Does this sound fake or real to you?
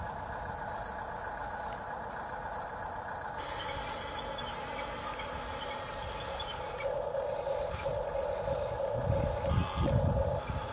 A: real